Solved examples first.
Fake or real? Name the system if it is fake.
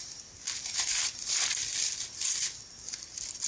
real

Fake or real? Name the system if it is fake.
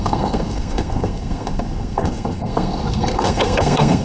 fake, codec, SNAC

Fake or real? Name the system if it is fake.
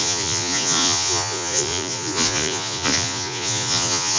fake, vocoder, Vocos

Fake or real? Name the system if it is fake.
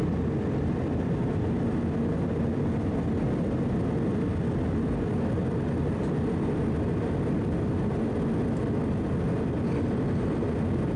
real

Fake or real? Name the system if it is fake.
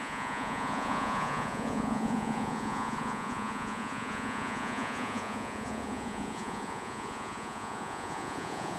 fake, vocoder, Vocos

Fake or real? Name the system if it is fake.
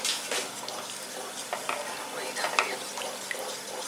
real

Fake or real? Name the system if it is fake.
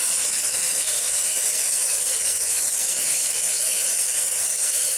fake, codec, SNAC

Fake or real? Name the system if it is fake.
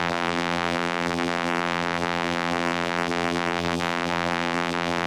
fake, vocoder, BigVGAN v2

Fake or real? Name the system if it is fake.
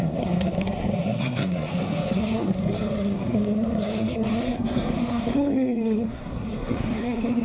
fake, codec, SNAC